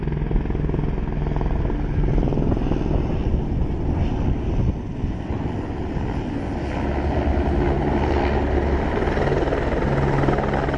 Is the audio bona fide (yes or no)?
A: yes